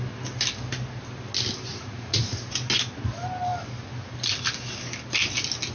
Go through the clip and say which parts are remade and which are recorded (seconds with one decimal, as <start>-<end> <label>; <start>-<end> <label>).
0.0-1.7 recorded; 1.7-2.4 remade; 2.4-5.7 recorded

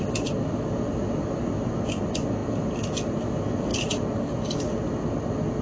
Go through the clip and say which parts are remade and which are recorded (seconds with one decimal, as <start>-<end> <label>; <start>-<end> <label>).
0.0-5.6 recorded

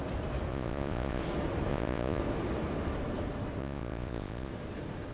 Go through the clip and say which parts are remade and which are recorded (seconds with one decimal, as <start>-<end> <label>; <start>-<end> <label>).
0.0-0.5 recorded; 0.5-1.2 remade; 1.2-1.7 recorded; 1.7-2.2 remade; 2.2-3.6 recorded; 3.6-4.5 remade; 4.5-5.1 recorded